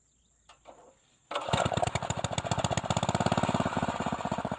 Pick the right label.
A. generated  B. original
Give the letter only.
B